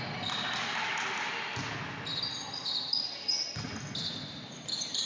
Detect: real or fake real